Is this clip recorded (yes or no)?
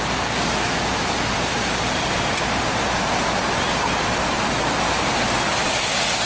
yes